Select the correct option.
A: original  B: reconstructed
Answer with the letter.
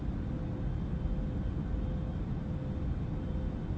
A